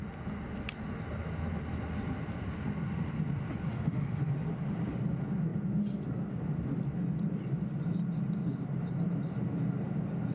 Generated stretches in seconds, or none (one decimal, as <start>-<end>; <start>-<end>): 3.7-4.2